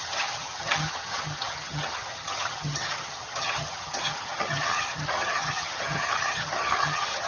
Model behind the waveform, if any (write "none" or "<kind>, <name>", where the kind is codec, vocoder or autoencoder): vocoder, HiFi-GAN